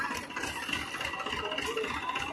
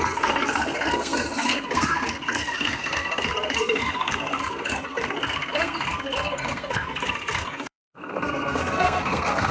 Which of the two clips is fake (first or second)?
second